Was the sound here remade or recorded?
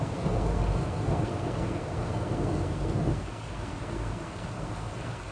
remade